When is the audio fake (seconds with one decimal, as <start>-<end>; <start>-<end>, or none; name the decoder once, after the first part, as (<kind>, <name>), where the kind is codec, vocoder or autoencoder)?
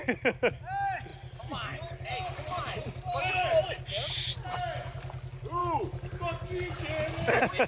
none